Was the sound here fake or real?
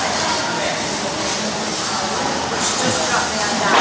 real